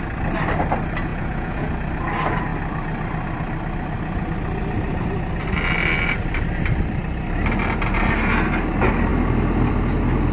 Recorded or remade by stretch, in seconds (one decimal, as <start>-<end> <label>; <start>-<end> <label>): 0.0-1.1 recorded; 1.1-1.7 remade; 1.7-10.3 recorded